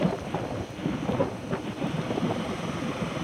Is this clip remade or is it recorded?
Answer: recorded